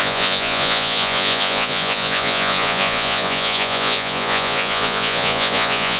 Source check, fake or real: fake